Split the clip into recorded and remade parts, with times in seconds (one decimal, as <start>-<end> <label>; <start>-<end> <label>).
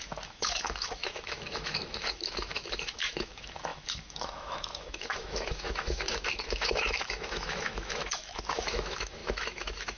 0.0-10.0 remade